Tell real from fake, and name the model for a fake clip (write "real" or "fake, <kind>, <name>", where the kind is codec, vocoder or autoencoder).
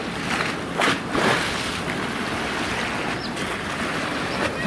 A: real